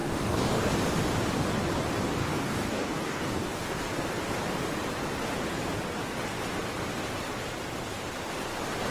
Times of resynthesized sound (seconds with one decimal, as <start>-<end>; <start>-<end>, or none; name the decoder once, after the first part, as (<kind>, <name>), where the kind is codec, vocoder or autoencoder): 0.0-0.7 (codec, DAC); 2.2-3.9